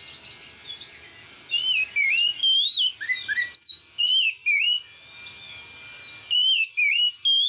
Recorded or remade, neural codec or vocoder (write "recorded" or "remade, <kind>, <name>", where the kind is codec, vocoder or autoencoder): recorded